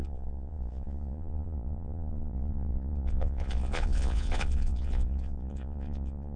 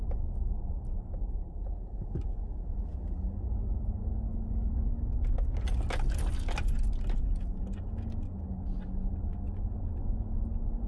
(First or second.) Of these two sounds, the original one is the second